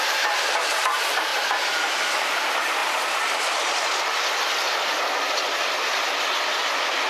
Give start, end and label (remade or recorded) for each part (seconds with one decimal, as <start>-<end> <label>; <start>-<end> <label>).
0.0-1.3 remade; 1.3-2.2 recorded; 2.2-2.8 remade; 2.8-7.1 recorded